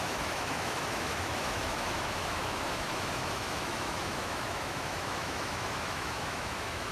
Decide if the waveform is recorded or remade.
remade